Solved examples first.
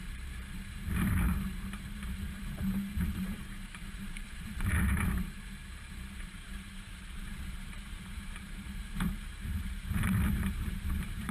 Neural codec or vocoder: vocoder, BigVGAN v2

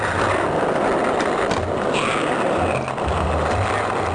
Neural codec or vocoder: none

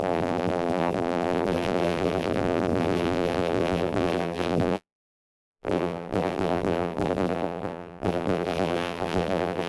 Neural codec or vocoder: vocoder, BigVGAN v2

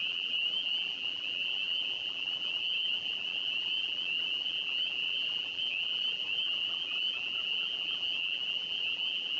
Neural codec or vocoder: vocoder, BigVGAN v2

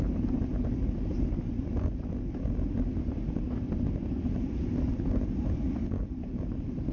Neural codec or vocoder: none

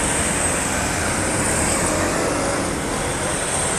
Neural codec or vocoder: none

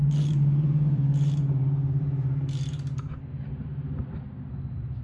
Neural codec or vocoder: vocoder, BigVGAN v2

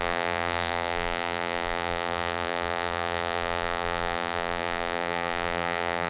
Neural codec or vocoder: vocoder, BigVGAN v2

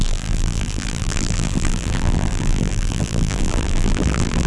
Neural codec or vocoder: vocoder, BigVGAN v2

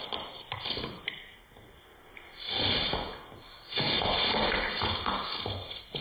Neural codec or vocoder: none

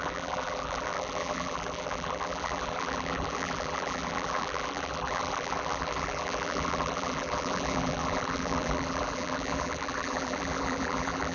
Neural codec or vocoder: vocoder, BigVGAN v2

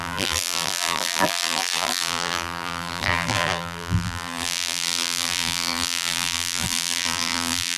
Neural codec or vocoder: vocoder, BigVGAN v2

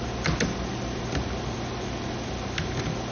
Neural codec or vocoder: none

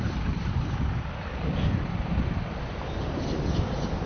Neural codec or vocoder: vocoder, BigVGAN v2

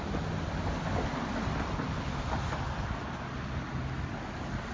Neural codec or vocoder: none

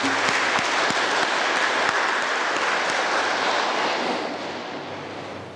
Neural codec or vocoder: none